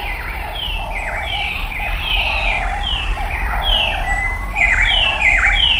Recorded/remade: recorded